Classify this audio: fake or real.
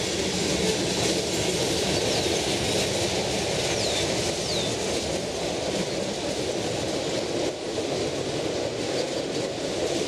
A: real